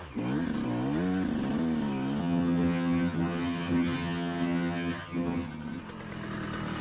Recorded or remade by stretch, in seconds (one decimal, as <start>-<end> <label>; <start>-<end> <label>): 0.0-2.2 recorded; 2.2-5.8 remade; 5.8-6.8 recorded